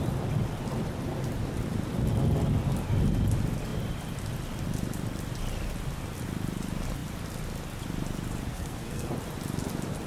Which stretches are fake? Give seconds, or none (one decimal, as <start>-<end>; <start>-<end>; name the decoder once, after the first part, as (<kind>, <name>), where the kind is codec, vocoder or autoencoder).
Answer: 8.5-9.1 (codec, SNAC)

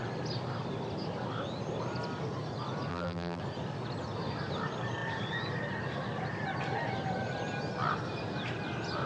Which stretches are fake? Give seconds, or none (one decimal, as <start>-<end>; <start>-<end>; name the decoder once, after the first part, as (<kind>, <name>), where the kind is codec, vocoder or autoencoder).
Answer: 2.9-3.4 (vocoder, BigVGAN v2)

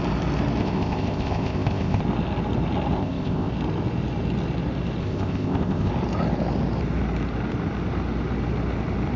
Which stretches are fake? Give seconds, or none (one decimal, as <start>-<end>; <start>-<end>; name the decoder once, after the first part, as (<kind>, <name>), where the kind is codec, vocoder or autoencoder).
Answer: 0.6-2.0 (codec, ZipCodec); 3.0-3.5; 5.0-5.9